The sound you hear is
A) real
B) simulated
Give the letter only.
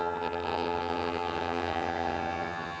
B